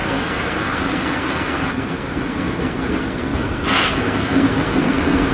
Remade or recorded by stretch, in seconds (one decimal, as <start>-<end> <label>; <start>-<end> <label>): 0.0-5.3 remade